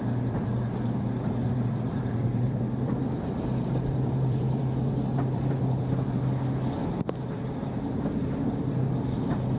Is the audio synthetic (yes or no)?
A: yes